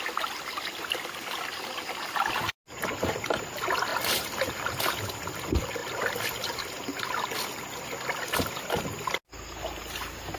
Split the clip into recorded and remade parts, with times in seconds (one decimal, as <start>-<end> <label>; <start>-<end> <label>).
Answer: 0.0-10.4 recorded